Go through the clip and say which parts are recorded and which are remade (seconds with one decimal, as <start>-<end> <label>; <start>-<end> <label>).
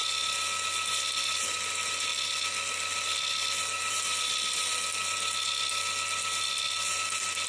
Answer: 0.0-7.5 recorded